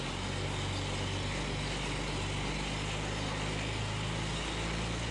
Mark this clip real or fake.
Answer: real